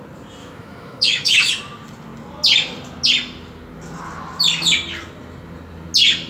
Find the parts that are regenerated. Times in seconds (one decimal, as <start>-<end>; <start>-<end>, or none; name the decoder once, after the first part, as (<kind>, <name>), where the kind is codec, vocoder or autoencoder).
0.4-1.5 (autoencoder, DAC-VAE)

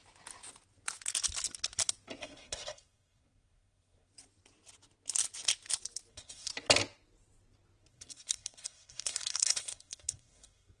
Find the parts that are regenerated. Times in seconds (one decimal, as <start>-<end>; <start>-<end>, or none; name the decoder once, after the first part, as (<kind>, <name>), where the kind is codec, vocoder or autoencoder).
2.2-4.1 (codec, SNAC); 6.1-6.5; 7.9-10.8

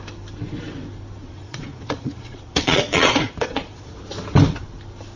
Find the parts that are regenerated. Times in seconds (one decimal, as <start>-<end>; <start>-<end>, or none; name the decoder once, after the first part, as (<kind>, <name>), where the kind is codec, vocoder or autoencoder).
1.2-3.9 (vocoder, Vocos)

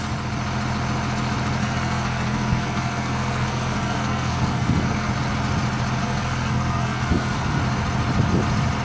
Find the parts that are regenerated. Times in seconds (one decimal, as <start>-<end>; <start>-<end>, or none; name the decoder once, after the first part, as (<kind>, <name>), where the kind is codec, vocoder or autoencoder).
1.6-5.1 (codec, SNAC); 6.0-7.6